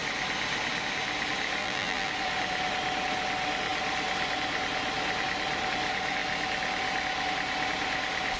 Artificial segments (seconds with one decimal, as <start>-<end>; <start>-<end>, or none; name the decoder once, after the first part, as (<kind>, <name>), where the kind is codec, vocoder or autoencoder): 1.6-2.1 (vocoder, BigVGAN v2)